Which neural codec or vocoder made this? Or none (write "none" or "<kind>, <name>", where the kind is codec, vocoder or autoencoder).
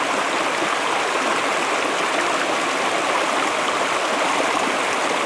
none